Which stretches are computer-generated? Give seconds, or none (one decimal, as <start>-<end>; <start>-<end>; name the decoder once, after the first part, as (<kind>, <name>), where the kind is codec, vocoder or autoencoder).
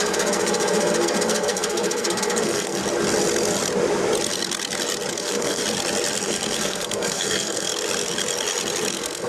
0.0-2.8 (codec, SNAC); 5.1-5.6; 6.2-7.7; 8.9-9.3